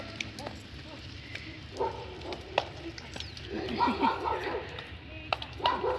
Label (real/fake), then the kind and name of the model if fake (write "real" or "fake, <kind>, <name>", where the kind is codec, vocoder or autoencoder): real